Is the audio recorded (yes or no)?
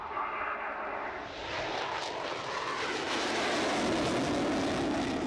yes